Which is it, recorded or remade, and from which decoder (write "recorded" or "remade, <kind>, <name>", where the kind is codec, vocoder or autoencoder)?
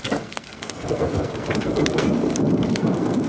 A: remade, codec, SNAC